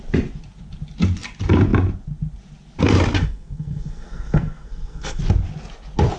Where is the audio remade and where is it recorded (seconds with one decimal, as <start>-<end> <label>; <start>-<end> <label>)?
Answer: 0.0-3.2 recorded; 3.2-5.2 remade; 5.2-6.2 recorded